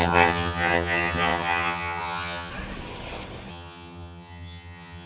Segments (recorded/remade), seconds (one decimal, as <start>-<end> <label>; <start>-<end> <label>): 0.0-2.5 remade; 2.5-3.5 recorded; 3.5-5.1 remade